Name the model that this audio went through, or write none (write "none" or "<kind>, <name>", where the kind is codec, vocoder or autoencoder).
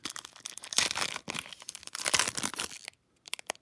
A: none